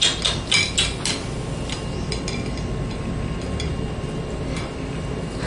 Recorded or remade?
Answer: recorded